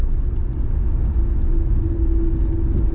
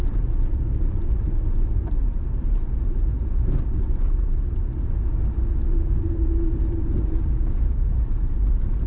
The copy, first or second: second